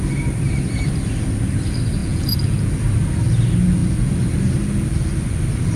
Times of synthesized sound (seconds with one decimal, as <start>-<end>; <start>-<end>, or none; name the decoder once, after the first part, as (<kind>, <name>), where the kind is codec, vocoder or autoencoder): 2.0-2.7 (vocoder, Vocos)